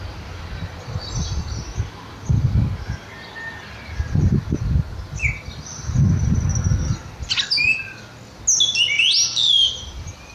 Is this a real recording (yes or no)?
yes